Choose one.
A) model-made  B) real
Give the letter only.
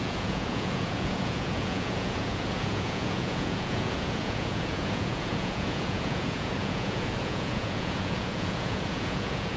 A